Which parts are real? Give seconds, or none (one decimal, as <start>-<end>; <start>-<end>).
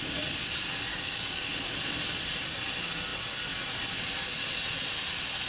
0.0-0.9; 1.5-5.5